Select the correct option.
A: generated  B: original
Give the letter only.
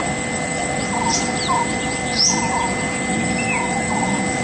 B